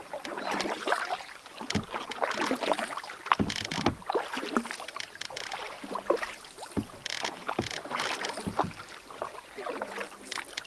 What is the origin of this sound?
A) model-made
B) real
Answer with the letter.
B